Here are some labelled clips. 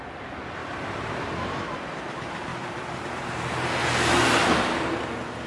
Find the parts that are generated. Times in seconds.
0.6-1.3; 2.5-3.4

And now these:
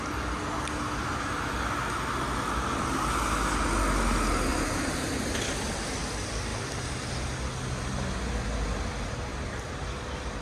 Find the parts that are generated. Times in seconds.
4.5-6.1; 6.5-7.1

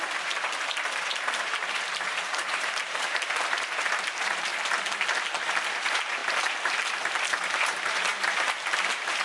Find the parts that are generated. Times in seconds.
0.0-4.5; 5.5-6.2; 7.4-9.2

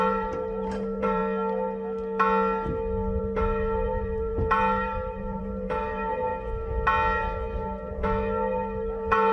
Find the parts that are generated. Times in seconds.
0.0-1.2; 3.2-6.3; 7.9-9.3